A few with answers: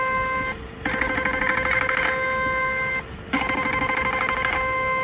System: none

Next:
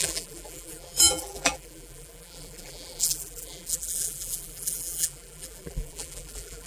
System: vocoder, BigVGAN v2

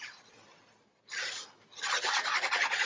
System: none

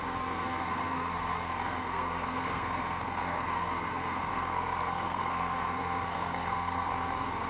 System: codec, SNAC